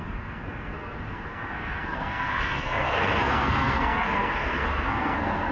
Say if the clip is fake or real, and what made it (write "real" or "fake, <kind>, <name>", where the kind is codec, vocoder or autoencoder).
fake, codec, SNAC